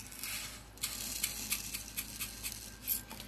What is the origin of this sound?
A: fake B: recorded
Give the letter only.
B